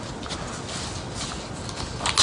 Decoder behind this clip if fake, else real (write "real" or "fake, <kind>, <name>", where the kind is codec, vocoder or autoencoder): real